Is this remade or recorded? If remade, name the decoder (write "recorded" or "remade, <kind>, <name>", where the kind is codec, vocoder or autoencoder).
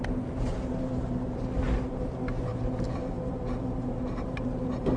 remade, vocoder, BigVGAN v2